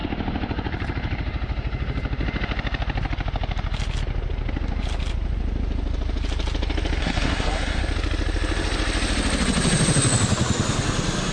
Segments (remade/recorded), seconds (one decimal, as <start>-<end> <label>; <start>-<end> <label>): 0.0-7.0 recorded; 7.0-7.8 remade; 7.8-11.3 recorded